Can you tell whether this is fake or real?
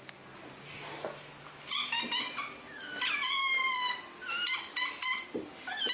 real